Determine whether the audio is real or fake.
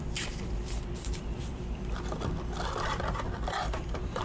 fake